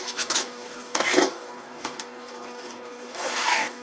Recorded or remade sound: remade